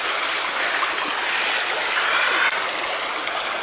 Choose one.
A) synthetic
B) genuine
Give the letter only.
B